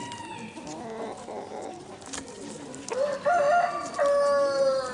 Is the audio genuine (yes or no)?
yes